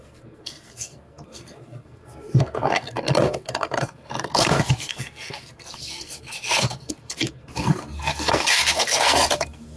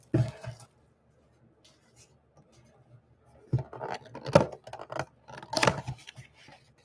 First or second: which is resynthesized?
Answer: first